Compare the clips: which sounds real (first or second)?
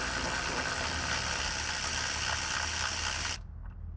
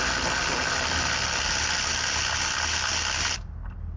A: first